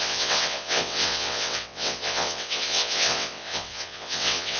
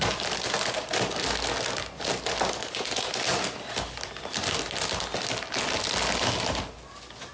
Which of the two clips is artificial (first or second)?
first